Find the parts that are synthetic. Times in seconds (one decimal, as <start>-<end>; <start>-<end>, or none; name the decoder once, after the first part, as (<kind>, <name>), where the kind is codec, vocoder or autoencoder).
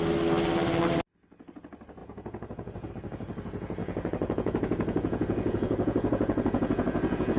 2.0-2.9 (vocoder, Vocos); 3.8-7.4